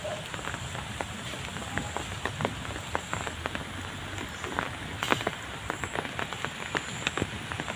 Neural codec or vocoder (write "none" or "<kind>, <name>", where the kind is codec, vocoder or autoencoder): none